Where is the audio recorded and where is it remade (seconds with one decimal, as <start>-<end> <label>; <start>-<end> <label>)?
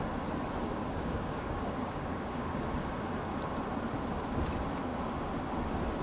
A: 0.0-0.6 recorded; 0.6-2.9 remade; 2.9-6.0 recorded